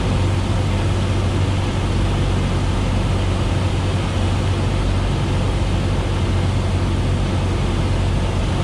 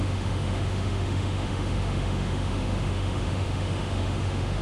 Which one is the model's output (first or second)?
second